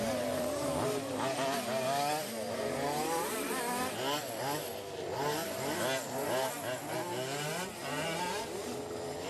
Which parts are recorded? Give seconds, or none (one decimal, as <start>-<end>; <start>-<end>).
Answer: 0.0-9.3